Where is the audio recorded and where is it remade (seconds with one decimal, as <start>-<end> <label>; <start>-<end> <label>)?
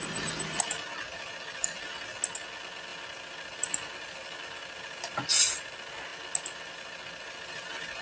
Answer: 0.0-8.0 recorded